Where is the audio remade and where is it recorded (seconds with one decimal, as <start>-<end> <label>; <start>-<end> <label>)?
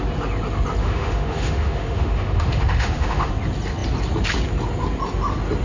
0.0-0.8 recorded; 0.8-3.3 remade; 3.3-5.6 recorded